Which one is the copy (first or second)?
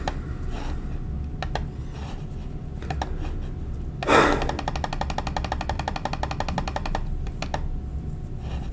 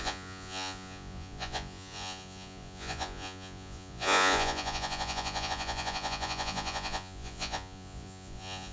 second